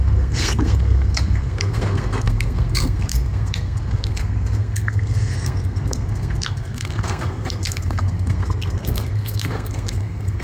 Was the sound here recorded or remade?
remade